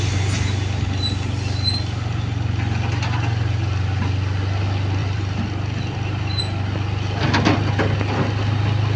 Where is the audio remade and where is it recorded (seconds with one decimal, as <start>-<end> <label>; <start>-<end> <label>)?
0.0-5.0 recorded; 5.0-6.4 remade; 6.4-9.0 recorded